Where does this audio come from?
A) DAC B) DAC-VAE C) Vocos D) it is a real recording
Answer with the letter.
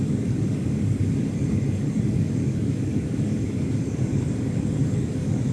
A